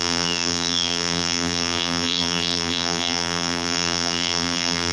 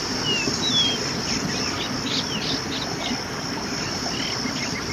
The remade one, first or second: first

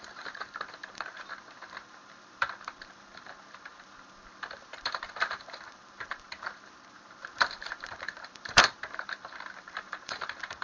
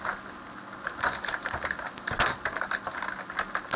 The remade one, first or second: first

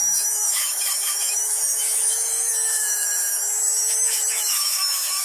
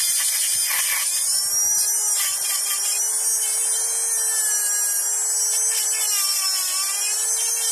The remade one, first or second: first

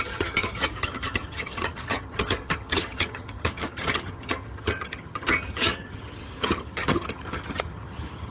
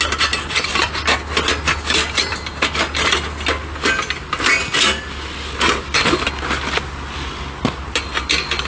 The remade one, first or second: first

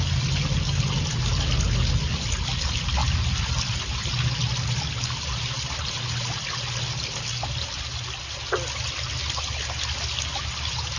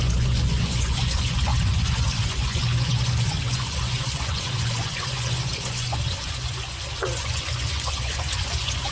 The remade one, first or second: second